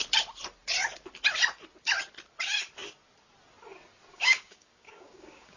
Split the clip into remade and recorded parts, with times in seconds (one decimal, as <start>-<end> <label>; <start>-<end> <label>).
0.0-4.1 recorded; 4.1-5.6 remade